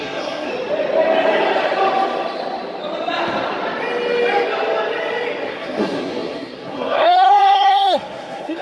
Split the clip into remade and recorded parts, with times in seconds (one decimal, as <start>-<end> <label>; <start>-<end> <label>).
0.0-0.5 remade; 0.5-5.5 recorded; 5.5-8.6 remade